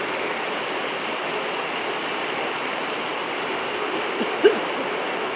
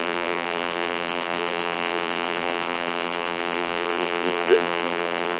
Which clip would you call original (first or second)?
first